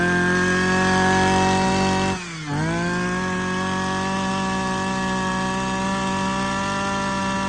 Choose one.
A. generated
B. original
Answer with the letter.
B